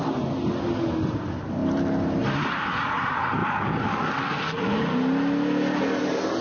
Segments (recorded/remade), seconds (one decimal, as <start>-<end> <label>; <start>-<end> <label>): 0.0-3.4 recorded; 3.4-4.1 remade; 4.1-6.4 recorded